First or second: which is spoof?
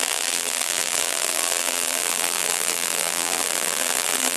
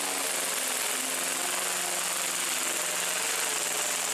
first